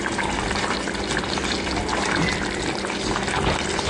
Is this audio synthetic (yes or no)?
no